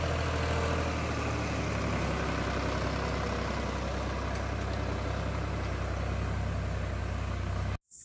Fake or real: real